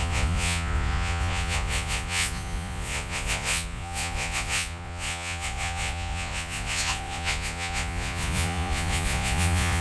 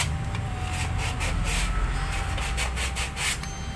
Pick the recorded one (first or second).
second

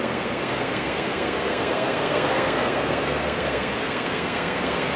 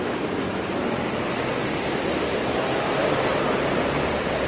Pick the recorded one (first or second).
second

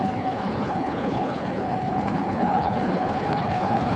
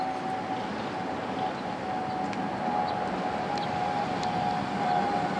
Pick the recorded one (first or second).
second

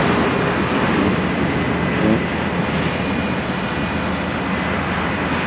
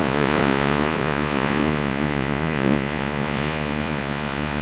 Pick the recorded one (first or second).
first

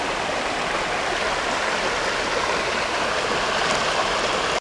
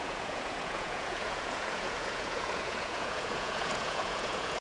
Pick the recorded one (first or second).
first